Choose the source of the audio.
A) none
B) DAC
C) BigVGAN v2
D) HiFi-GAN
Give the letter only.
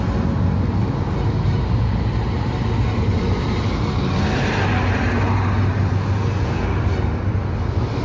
A